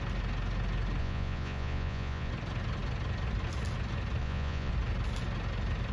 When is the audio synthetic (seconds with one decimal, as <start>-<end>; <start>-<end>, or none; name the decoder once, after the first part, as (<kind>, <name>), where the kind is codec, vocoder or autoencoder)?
1.0-2.3 (vocoder, Vocos); 4.2-4.7